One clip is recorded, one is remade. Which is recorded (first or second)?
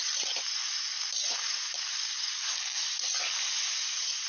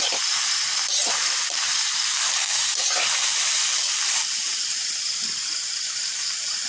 first